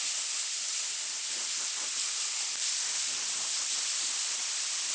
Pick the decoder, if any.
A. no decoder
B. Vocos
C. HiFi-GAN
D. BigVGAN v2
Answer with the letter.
A